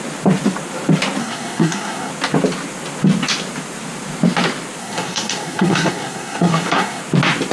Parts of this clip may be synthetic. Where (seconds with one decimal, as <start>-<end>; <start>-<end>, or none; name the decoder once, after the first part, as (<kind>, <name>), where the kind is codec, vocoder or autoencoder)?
1.2-2.1 (codec, SNAC); 4.8-7.0